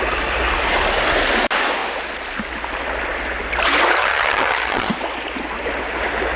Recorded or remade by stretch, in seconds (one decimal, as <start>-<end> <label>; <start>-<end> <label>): 0.0-4.0 recorded; 4.0-4.9 remade; 4.9-6.4 recorded